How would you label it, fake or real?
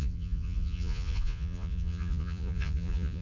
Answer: fake